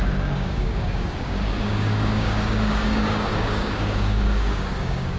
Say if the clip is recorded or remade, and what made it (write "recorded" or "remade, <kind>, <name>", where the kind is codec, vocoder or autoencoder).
remade, codec, DAC